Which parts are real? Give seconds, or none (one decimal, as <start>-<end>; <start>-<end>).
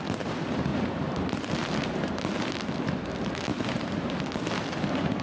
none